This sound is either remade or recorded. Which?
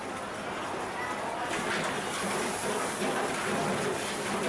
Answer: recorded